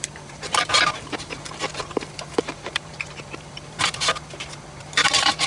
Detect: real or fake fake